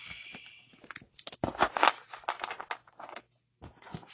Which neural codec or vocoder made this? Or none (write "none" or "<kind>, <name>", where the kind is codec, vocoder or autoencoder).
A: none